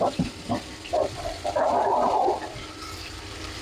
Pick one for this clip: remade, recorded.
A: remade